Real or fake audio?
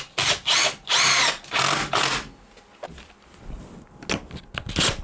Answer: real